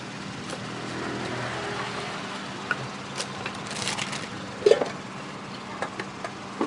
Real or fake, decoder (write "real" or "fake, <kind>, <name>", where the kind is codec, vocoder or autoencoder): real